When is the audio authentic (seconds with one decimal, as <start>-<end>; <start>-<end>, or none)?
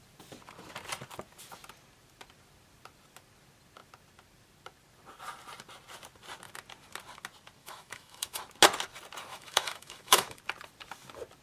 0.0-7.6; 8.4-9.3; 10.4-11.4